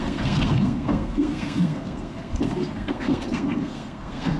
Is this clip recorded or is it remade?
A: remade